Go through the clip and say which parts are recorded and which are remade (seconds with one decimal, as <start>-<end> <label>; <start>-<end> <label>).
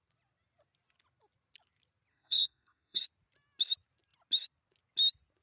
0.0-2.1 recorded; 2.1-3.0 remade; 3.0-5.4 recorded